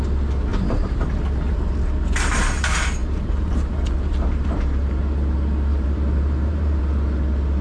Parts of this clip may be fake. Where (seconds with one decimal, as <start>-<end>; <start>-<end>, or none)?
0.5-1.2; 3.0-4.9; 5.7-6.8